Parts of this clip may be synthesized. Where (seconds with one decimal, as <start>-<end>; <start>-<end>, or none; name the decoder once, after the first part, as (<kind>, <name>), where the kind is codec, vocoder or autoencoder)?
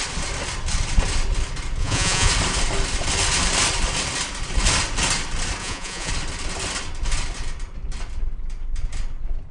1.8-2.3 (vocoder, Vocos); 5.6-6.1